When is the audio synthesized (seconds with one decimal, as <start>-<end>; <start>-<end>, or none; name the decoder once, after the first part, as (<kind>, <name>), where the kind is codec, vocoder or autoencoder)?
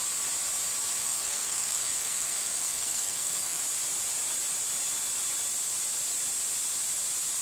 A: 1.0-3.6 (codec, SNAC)